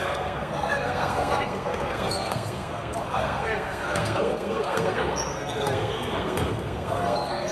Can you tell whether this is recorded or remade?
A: remade